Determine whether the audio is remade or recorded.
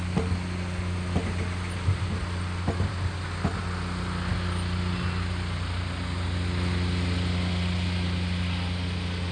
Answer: recorded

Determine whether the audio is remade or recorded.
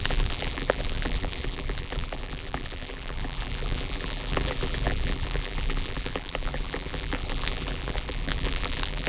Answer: remade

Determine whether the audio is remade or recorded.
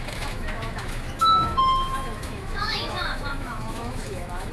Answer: remade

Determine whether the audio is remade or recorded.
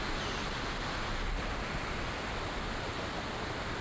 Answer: recorded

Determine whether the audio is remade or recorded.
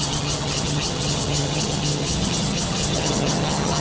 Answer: remade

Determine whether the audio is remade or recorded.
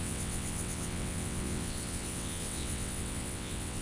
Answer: remade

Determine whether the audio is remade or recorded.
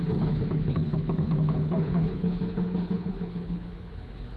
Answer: remade